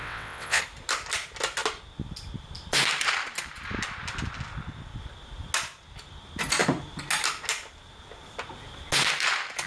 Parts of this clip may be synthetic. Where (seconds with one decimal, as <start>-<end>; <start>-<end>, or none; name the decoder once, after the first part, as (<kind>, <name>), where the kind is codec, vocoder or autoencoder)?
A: 0.0-0.6 (vocoder, WaveNeXt)